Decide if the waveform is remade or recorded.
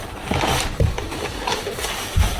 remade